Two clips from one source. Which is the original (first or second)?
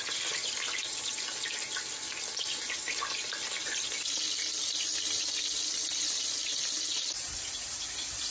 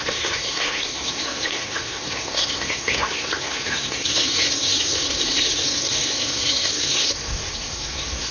first